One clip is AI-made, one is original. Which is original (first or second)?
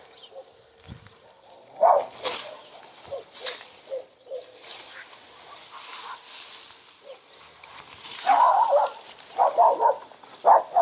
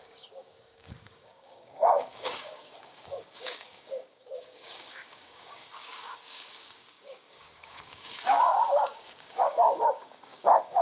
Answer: first